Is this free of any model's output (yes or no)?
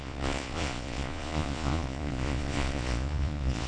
no